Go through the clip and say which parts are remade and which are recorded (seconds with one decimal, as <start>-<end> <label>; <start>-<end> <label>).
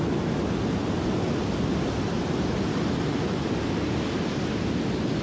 0.0-5.2 recorded